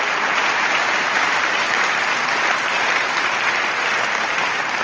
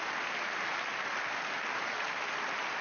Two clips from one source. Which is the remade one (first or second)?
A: first